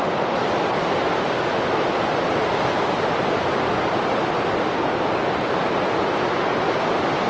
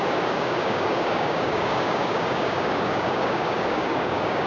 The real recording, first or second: first